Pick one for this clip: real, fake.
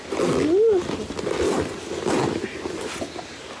real